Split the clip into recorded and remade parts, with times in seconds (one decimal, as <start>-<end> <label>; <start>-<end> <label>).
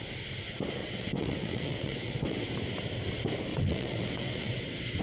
0.0-0.8 recorded; 0.8-2.5 remade; 2.5-3.5 recorded; 3.5-5.0 remade